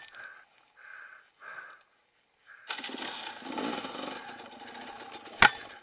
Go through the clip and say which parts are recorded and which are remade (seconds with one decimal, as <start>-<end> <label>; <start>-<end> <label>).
0.0-5.8 recorded